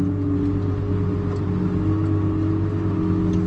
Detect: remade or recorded recorded